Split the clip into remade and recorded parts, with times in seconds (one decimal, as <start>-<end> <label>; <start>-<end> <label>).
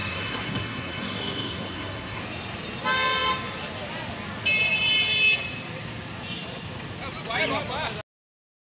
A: 0.0-2.2 remade; 2.2-8.7 recorded